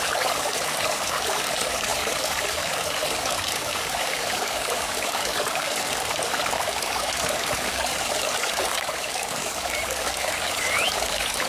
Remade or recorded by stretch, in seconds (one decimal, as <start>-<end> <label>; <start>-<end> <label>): 0.0-11.5 remade